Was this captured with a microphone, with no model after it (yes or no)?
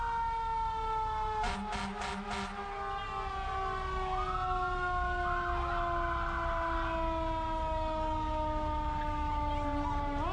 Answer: yes